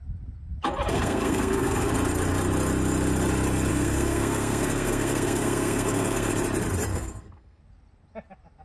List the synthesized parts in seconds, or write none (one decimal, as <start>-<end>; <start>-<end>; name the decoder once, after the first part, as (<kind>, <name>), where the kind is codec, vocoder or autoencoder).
0.9-1.9 (codec, SNAC); 3.7-6.3; 6.9-7.6